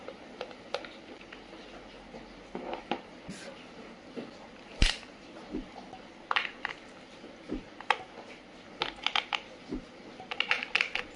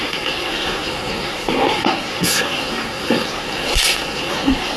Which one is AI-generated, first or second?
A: second